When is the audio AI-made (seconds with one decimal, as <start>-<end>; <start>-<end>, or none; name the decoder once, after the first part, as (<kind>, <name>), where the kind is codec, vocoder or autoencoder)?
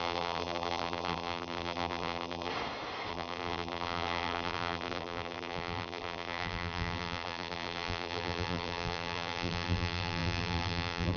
0.0-2.5 (vocoder, BigVGAN v2); 3.1-11.2